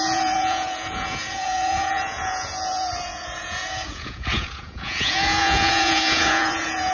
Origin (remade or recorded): remade